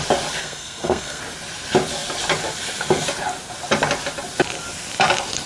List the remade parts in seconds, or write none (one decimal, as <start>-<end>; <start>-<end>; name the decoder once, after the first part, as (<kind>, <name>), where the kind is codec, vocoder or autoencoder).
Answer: 0.4-1.2 (codec, SNAC)